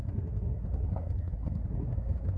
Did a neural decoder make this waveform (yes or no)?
yes